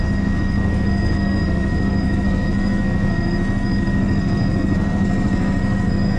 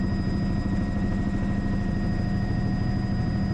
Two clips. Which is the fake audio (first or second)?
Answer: first